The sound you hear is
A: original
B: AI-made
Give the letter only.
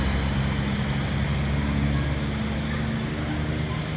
A